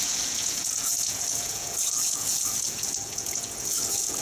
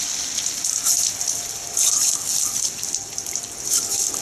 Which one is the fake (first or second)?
first